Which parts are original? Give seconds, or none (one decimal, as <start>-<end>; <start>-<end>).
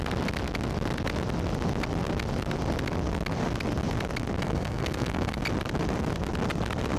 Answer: 0.0-4.4; 5.4-7.0